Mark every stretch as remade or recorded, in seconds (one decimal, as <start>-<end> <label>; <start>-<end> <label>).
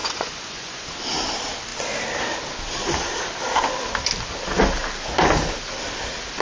0.0-0.9 remade; 0.9-6.4 recorded